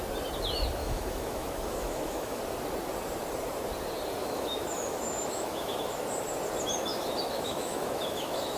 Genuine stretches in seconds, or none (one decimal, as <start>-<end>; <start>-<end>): 0.0-0.8; 2.4-4.2; 6.0-6.9